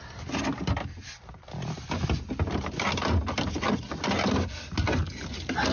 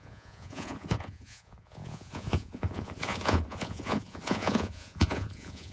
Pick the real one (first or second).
first